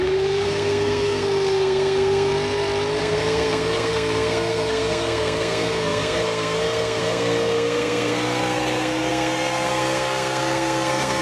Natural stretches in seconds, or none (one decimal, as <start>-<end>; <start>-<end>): 2.3-3.0